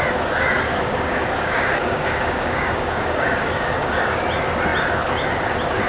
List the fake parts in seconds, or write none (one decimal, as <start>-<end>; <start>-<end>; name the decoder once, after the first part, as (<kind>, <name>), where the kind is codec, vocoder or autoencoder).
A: 0.7-4.2 (codec, DAC)